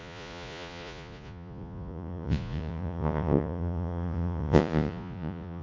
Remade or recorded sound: remade